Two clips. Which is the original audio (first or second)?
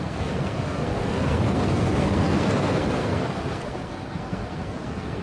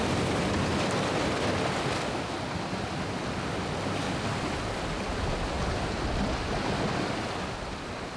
second